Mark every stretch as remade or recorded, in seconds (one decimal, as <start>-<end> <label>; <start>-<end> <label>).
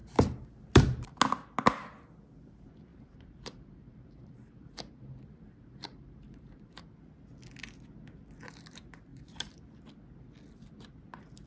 0.0-1.2 remade; 1.2-2.9 recorded; 2.9-6.8 remade; 6.8-9.1 recorded; 9.1-9.6 remade; 9.6-11.5 recorded